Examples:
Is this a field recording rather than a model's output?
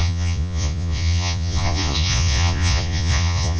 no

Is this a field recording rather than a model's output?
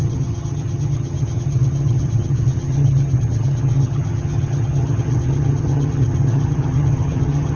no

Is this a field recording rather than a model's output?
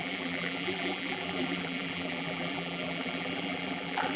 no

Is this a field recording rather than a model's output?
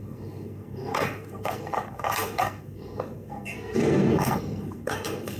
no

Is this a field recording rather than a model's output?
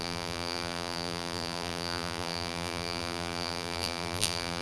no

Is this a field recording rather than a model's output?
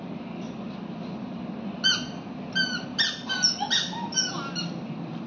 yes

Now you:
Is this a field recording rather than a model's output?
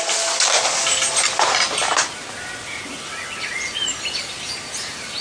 yes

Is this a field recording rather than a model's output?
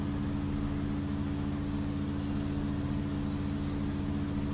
yes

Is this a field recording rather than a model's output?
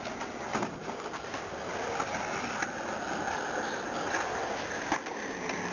yes